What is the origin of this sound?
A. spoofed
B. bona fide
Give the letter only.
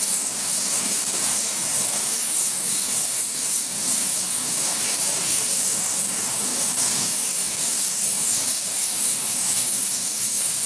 A